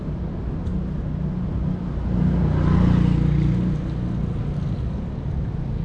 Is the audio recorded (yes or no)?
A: yes